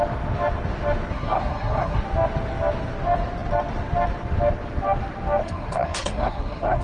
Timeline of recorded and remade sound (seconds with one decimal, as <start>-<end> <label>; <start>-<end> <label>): 0.0-1.1 recorded; 1.1-2.0 remade; 2.0-5.4 recorded; 5.4-6.8 remade